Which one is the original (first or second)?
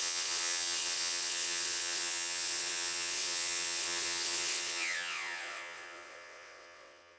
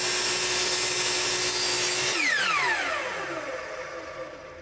second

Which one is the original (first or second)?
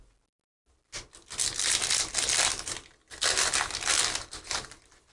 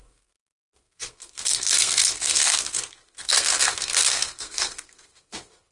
first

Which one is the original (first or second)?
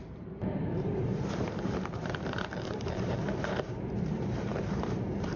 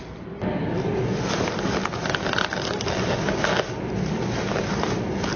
second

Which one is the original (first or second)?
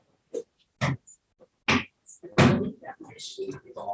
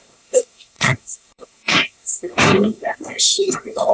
first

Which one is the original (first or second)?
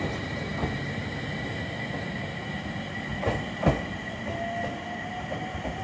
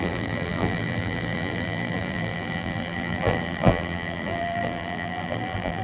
first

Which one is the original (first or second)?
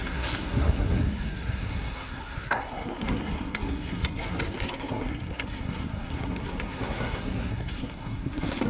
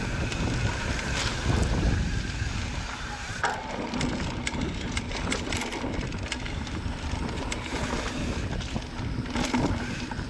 second